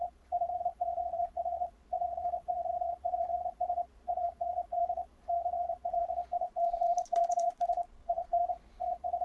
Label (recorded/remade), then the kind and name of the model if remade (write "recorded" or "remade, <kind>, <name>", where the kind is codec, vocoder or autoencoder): remade, vocoder, Vocos